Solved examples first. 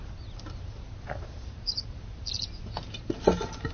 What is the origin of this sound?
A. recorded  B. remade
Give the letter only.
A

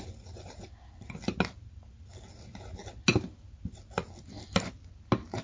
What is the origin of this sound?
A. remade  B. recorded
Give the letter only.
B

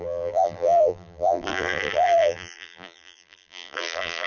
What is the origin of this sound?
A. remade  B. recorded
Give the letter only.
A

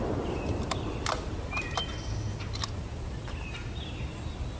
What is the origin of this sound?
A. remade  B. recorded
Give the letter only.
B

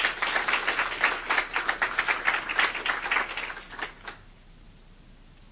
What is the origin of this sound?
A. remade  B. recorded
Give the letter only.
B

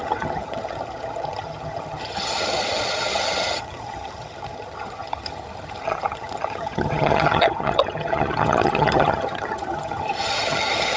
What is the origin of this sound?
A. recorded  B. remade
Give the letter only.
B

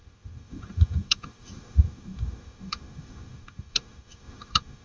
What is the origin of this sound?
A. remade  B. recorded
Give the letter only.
A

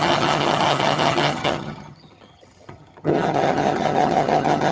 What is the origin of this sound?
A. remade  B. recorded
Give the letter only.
A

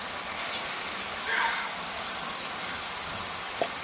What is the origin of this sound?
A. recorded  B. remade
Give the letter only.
A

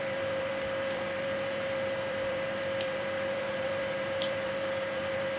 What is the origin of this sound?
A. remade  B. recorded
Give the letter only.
A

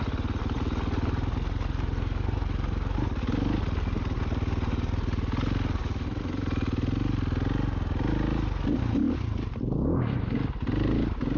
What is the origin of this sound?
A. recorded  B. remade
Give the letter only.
A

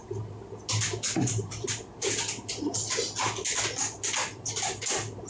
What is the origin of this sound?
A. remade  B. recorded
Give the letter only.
B